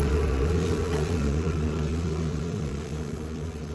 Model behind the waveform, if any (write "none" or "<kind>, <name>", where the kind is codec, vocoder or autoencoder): vocoder, Vocos